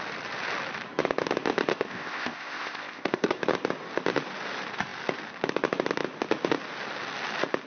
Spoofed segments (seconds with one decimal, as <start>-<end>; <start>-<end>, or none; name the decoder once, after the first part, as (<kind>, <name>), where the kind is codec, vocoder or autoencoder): 1.7-3.4 (codec, ZipCodec)

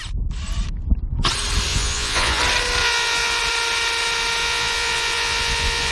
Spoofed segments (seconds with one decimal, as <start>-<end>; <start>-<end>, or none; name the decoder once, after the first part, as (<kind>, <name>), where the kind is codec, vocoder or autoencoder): 1.7-2.4 (vocoder, Vocos); 2.8-3.4; 4.4-5.9

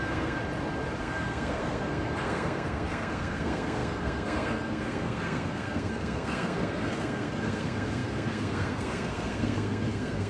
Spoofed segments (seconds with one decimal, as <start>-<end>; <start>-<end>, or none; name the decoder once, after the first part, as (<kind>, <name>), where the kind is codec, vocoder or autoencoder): 0.0-0.4 (codec, SNAC); 1.0-10.3

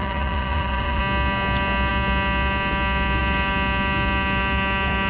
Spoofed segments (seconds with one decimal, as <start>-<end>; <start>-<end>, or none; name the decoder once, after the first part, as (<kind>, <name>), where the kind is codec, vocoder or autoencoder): 0.0-1.0 (vocoder, Vocos)

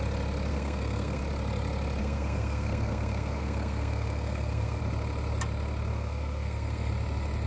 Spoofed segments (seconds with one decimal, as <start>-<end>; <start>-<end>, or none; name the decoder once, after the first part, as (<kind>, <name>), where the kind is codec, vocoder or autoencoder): 0.5-1.2 (codec, SNAC); 2.0-4.8; 5.9-6.9

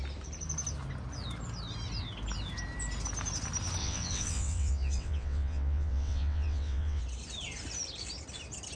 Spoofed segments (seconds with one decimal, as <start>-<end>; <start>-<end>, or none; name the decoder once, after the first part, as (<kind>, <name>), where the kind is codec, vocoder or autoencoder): 3.8-7.0 (vocoder, WaveNeXt)

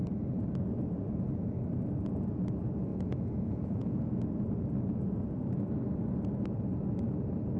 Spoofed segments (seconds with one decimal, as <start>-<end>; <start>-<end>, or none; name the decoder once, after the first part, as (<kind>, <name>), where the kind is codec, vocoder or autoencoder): 2.9-4.2 (vocoder, Vocos)